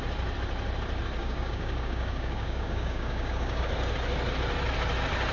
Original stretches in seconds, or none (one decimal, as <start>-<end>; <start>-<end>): 0.0-1.2; 3.7-5.3